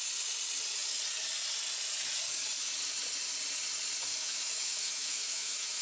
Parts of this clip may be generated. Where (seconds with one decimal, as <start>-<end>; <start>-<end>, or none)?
4.1-5.8